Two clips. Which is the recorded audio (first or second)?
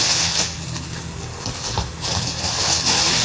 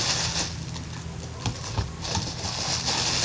second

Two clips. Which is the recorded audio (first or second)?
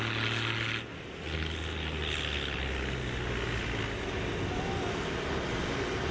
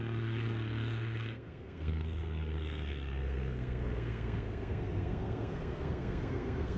first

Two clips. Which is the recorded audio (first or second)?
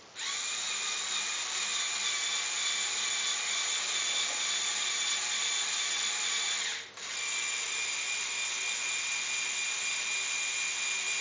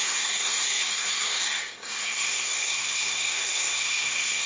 first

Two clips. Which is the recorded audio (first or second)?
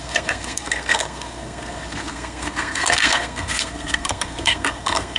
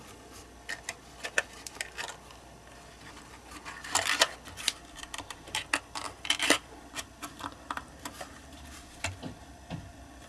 second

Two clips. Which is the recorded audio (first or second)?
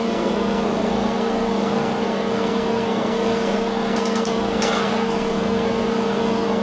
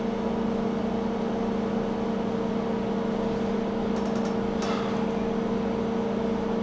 second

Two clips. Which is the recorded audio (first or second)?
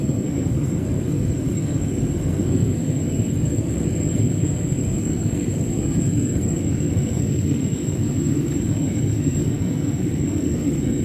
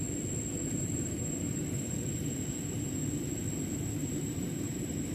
second